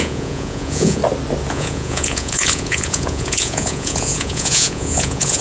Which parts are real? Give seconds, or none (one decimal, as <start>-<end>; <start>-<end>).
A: 1.0-1.5